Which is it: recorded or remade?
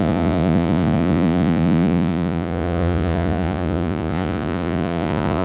remade